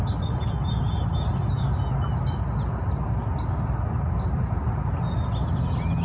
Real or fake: real